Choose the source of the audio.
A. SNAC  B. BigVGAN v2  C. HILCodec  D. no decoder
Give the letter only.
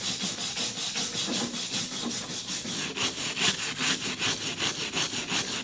D